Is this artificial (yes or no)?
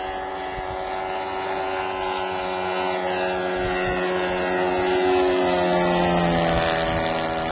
no